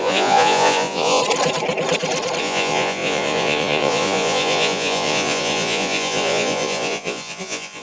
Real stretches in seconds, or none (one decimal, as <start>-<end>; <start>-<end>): 1.2-2.4